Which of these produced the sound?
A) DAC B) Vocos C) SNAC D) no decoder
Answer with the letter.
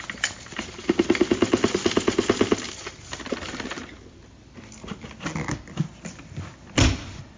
D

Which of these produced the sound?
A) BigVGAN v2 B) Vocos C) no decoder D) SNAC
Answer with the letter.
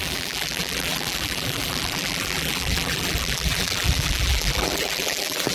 A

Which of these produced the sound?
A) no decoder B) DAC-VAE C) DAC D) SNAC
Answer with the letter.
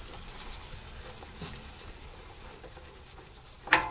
A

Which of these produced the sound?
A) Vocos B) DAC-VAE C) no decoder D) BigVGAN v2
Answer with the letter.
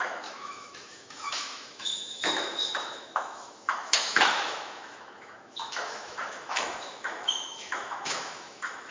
B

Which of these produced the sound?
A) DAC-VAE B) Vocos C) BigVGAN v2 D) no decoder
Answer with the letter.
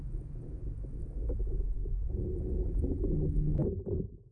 D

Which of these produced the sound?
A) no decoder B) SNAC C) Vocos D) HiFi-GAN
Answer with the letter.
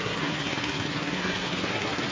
B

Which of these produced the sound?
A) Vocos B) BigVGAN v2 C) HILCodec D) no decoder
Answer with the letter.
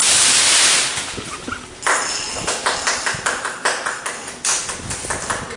D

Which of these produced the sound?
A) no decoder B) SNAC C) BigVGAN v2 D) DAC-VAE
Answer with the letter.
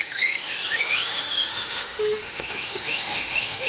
D